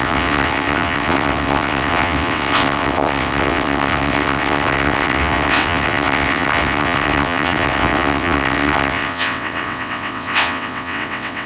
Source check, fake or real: fake